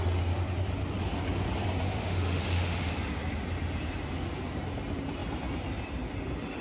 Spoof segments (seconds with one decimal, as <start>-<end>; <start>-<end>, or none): 1.9-2.9